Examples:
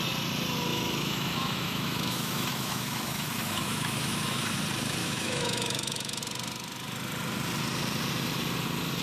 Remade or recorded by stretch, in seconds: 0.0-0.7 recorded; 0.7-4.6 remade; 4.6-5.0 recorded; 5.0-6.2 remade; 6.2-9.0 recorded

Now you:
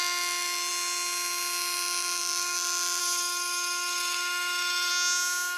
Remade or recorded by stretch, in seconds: 0.0-3.0 recorded; 3.0-4.9 remade; 4.9-5.6 recorded

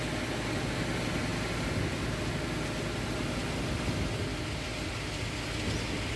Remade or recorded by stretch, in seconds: 0.0-6.2 recorded

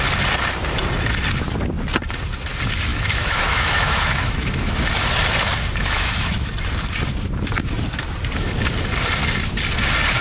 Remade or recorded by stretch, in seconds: 0.0-2.9 recorded; 2.9-4.8 remade; 4.8-5.8 recorded; 5.8-6.5 remade; 6.5-10.2 recorded

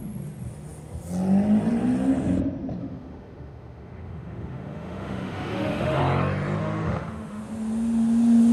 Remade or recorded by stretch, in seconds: 0.0-2.8 recorded; 2.8-6.0 remade; 6.0-6.6 recorded; 6.6-7.4 remade; 7.4-8.5 recorded

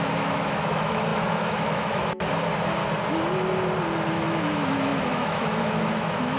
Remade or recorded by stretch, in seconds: 0.0-2.8 remade; 2.8-4.1 recorded; 4.1-6.4 remade

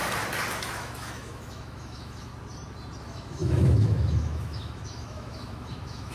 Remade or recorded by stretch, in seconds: 0.0-0.6 recorded; 0.6-2.3 remade; 2.3-3.0 recorded; 3.0-6.1 remade

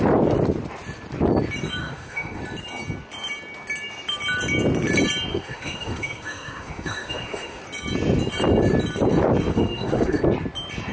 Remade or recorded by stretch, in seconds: 0.0-1.8 recorded; 1.8-2.4 remade; 2.4-5.3 recorded; 5.3-7.6 remade; 7.6-9.5 recorded; 9.5-10.2 remade; 10.2-10.9 recorded